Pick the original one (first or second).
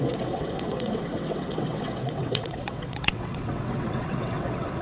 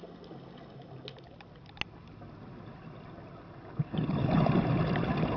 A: second